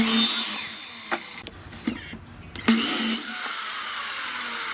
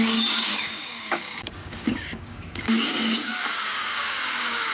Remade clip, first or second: second